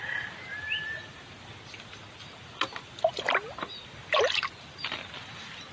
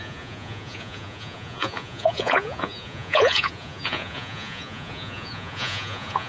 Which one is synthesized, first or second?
second